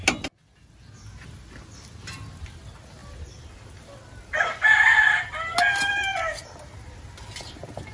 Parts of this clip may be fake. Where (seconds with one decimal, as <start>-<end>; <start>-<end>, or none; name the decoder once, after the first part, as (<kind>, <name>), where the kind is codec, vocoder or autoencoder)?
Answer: none